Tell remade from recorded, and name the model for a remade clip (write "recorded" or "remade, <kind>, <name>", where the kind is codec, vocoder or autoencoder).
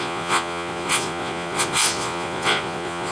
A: remade, vocoder, Vocos